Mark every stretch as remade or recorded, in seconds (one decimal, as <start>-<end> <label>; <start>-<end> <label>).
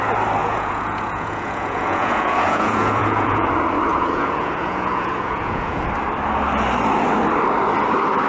0.0-0.4 recorded; 0.4-3.5 remade; 3.5-3.9 recorded; 3.9-5.8 remade; 5.8-8.3 recorded